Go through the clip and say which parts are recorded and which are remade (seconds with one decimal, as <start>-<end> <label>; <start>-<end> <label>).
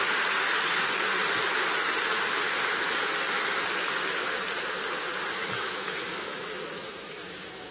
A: 0.0-5.3 recorded; 5.3-7.7 remade